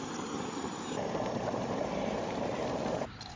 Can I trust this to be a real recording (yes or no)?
no